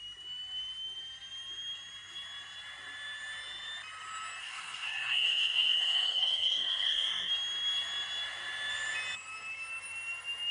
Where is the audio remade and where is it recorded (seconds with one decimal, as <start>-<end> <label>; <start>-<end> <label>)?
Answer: 0.0-4.4 recorded; 4.4-7.3 remade; 7.3-10.5 recorded